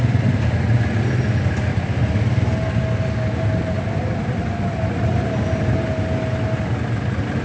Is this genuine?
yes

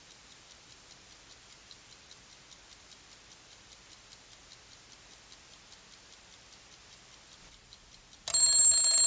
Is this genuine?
yes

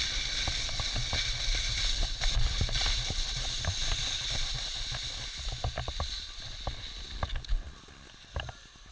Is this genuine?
yes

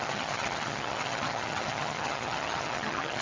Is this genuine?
no